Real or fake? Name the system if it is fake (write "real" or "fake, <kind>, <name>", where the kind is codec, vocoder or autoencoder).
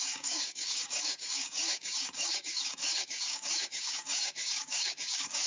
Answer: fake, codec, DAC